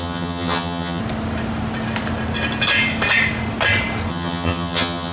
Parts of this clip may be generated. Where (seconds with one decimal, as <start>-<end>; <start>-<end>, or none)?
0.0-1.0; 4.1-5.1